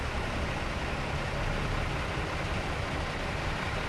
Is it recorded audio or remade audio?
recorded